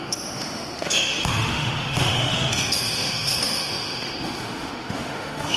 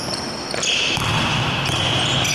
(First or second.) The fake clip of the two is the first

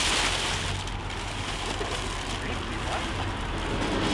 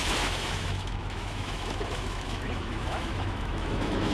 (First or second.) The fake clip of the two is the second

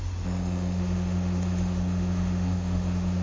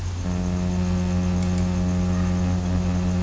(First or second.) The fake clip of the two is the first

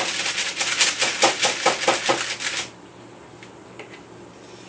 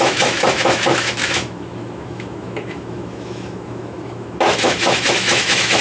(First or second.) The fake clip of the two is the second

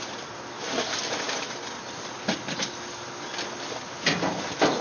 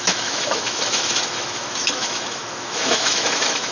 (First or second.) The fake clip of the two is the second